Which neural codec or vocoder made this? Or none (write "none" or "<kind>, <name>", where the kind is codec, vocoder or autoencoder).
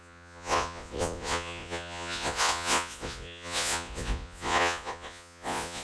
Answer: vocoder, Vocos